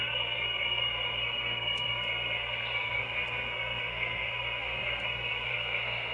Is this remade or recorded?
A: remade